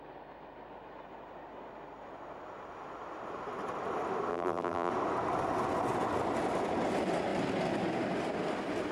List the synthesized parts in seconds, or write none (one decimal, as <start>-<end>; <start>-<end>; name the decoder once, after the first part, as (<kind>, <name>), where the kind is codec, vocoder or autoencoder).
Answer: 4.3-4.9 (vocoder, BigVGAN v2)